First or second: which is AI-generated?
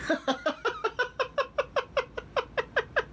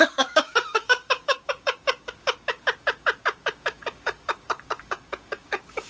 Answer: second